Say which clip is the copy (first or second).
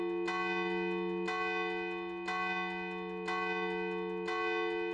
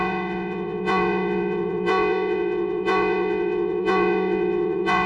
second